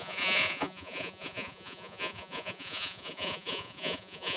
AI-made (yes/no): yes